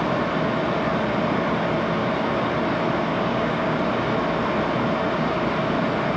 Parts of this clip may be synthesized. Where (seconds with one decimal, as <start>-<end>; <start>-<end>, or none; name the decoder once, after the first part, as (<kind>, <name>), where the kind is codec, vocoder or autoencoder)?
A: 3.1-3.8 (codec, DAC)